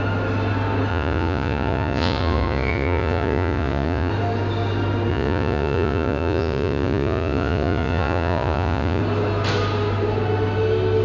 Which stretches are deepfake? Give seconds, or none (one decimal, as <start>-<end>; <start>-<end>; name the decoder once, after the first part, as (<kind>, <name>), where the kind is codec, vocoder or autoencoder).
0.9-4.1 (vocoder, Vocos); 5.1-9.0